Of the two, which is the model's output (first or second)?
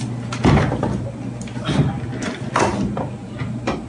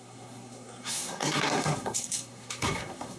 second